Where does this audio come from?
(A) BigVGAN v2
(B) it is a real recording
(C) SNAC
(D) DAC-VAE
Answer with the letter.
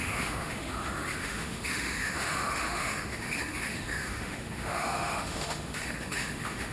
D